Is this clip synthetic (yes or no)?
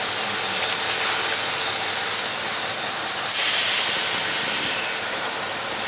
no